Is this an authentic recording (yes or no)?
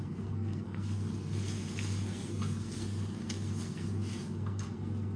no